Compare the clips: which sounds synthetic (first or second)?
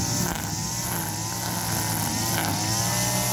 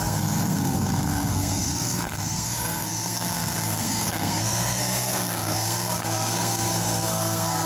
second